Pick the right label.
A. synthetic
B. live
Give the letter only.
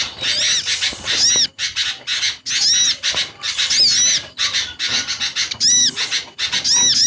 B